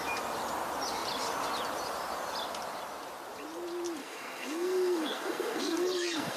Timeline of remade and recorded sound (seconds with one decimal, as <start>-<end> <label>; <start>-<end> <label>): 0.0-4.0 recorded; 4.0-6.4 remade